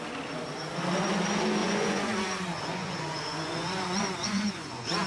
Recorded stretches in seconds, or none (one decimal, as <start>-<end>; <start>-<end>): 0.0-1.6